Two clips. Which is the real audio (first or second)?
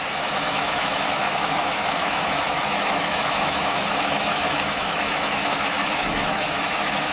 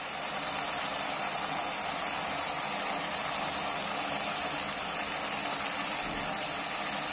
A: second